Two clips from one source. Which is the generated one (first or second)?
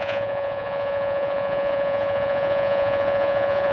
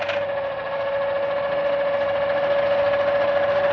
first